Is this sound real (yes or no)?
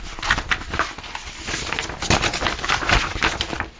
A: yes